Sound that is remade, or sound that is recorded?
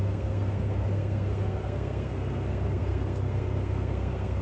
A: remade